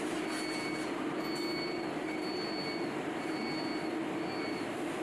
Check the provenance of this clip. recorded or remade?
recorded